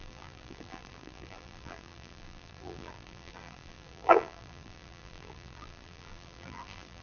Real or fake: fake